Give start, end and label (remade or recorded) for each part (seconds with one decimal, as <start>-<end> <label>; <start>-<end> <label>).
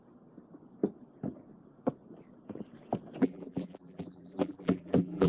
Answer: 0.0-3.2 recorded; 3.2-5.3 remade